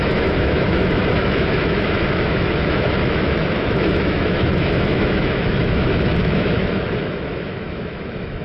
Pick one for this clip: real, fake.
fake